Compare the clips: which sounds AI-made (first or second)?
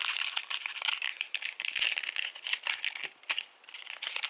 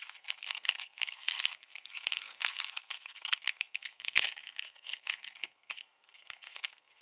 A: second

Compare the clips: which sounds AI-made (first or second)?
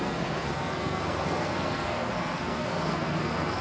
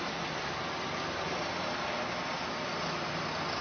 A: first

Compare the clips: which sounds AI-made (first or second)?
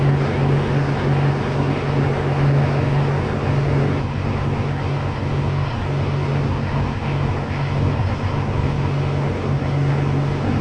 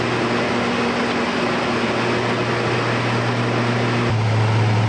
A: first